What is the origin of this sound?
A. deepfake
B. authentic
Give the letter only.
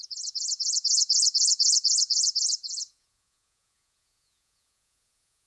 A